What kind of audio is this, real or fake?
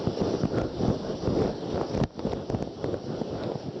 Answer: real